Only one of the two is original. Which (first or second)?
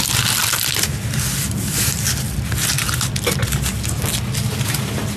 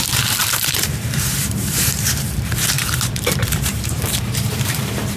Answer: first